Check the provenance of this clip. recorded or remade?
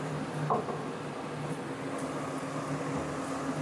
recorded